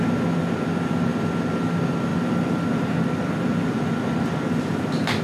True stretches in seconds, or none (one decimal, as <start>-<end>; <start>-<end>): 0.0-2.1

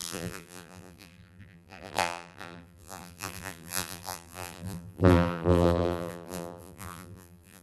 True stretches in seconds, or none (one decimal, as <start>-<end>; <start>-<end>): none